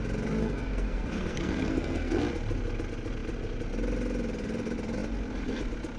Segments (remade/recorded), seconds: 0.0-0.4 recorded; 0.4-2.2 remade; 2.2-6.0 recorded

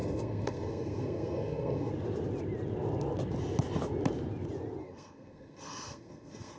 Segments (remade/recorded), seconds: 0.0-1.9 remade; 1.9-4.8 recorded; 4.8-6.6 remade

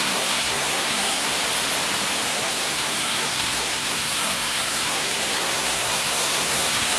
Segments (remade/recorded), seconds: 0.0-1.3 remade; 1.3-2.3 recorded; 2.3-7.0 remade

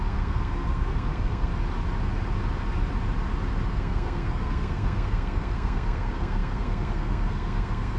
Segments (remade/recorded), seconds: 0.0-1.5 remade; 1.5-3.7 recorded; 3.7-8.0 remade

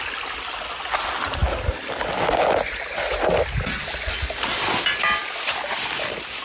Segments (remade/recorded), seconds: 0.0-6.4 recorded

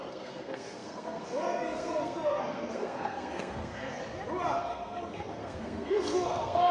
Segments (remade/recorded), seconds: 0.0-4.0 remade; 4.0-4.6 recorded; 4.6-6.7 remade